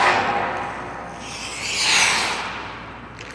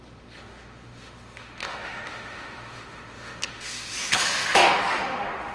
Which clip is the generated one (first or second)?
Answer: second